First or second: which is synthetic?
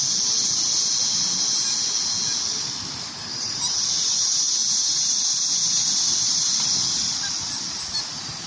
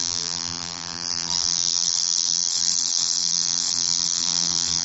second